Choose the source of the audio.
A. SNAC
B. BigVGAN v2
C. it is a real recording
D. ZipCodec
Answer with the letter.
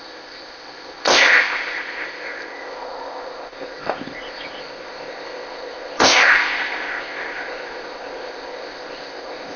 D